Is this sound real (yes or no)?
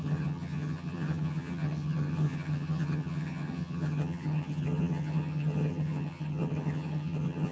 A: no